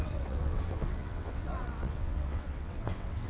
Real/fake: fake